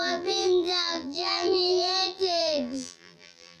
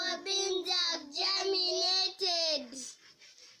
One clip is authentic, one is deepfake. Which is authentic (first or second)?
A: second